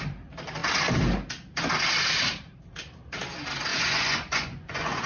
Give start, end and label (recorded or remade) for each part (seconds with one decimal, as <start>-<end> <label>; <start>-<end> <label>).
0.0-3.7 recorded; 3.7-5.1 remade